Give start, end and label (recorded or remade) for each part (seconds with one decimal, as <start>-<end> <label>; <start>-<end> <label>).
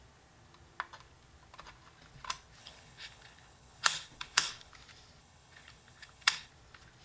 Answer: 0.0-2.6 recorded; 2.6-4.7 remade; 4.7-5.2 recorded; 5.2-6.5 remade; 6.5-7.0 recorded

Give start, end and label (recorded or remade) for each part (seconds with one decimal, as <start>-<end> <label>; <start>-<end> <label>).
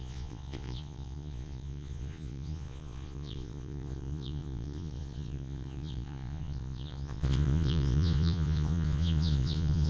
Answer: 0.0-9.9 remade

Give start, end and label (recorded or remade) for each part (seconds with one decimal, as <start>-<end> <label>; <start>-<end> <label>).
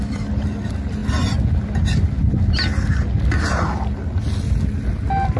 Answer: 0.0-5.4 recorded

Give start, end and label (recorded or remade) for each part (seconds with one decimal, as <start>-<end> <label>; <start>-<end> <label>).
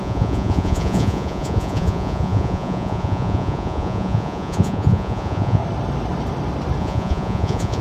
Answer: 0.0-5.6 remade; 5.6-6.8 recorded; 6.8-7.8 remade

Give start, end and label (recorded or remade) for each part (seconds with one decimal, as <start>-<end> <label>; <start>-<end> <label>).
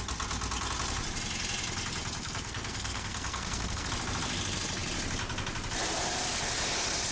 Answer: 0.0-2.2 recorded; 2.2-3.9 remade; 3.9-7.1 recorded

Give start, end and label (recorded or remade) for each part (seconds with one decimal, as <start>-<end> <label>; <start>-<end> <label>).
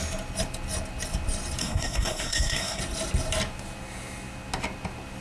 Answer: 0.0-1.6 recorded; 1.6-2.8 remade; 2.8-5.2 recorded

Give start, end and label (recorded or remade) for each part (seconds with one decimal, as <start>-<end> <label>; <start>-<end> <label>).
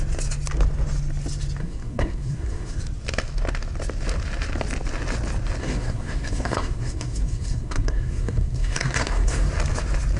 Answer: 0.0-1.6 recorded; 1.6-2.8 remade; 2.8-5.6 recorded; 5.6-9.5 remade; 9.5-10.2 recorded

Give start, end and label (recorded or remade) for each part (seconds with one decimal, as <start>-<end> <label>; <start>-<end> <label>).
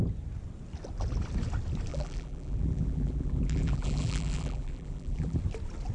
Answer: 0.0-1.9 recorded; 1.9-5.4 remade; 5.4-5.9 recorded